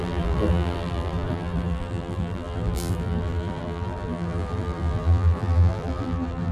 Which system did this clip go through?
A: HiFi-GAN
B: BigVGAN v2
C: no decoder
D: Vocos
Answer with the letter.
B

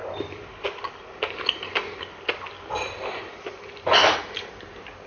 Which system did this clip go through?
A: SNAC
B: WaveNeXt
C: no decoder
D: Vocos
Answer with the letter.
C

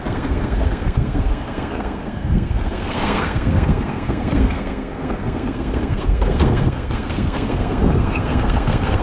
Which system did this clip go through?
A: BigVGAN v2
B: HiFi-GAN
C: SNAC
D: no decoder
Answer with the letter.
C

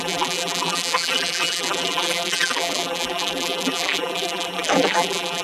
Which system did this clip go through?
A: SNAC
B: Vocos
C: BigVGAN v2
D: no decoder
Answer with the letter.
C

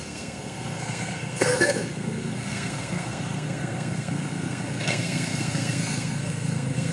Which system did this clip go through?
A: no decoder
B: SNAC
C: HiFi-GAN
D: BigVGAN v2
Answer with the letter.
B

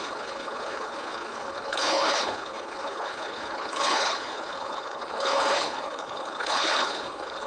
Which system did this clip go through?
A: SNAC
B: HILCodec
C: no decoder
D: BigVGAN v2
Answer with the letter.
B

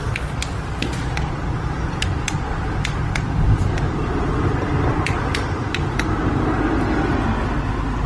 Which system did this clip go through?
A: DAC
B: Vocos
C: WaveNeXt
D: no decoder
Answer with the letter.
D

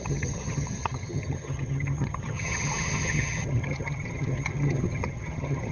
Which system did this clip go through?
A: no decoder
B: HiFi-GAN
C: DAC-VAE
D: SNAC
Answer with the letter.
B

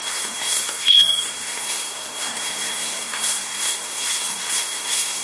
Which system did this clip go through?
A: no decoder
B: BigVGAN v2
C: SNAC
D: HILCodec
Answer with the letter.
C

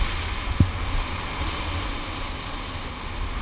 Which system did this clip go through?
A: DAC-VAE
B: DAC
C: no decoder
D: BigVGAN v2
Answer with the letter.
C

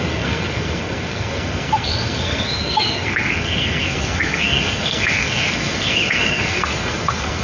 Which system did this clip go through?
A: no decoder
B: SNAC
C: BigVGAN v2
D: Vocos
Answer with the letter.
B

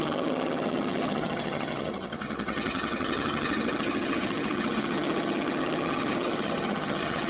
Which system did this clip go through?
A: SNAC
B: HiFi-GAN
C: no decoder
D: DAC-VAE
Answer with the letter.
B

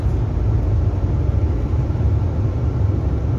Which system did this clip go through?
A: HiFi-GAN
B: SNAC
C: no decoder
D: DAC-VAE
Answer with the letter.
C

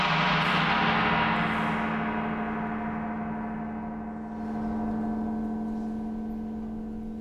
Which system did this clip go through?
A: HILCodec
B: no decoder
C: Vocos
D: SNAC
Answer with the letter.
B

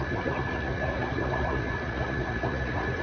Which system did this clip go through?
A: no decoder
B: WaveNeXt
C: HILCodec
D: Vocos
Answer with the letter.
D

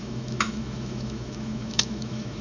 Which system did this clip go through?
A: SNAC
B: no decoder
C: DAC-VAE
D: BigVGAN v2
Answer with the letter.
C